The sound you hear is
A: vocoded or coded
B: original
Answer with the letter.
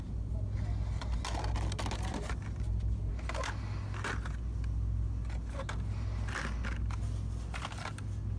B